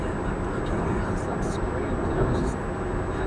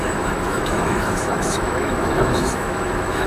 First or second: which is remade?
second